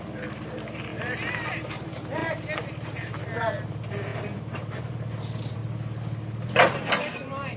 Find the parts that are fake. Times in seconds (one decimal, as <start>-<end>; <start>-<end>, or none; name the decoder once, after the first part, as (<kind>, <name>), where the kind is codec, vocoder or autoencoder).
0.0-5.6 (vocoder, BigVGAN v2); 6.5-7.6